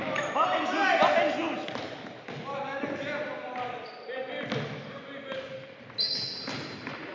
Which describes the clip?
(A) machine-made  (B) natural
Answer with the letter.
B